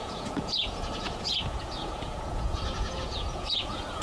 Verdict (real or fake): fake